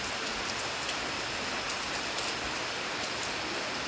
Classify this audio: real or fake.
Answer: real